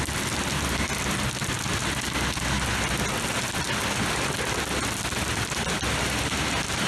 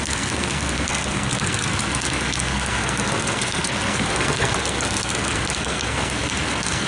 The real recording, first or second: first